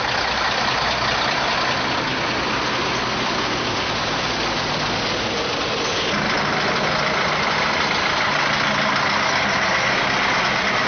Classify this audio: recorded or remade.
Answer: recorded